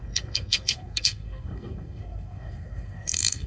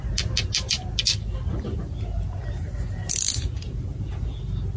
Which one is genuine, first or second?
second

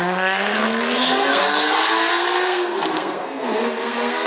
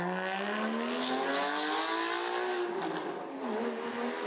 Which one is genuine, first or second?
second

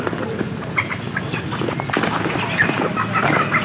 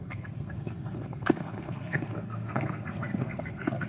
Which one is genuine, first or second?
first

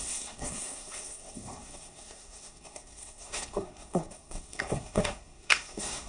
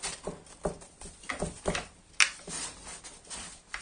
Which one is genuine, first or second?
second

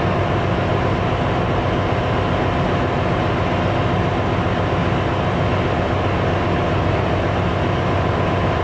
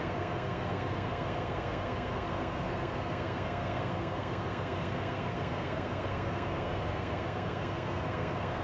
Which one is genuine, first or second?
first